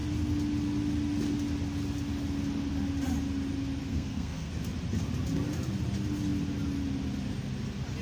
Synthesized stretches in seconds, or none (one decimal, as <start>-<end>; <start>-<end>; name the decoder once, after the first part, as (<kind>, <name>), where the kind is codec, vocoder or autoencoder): 3.9-4.5 (codec, SNAC)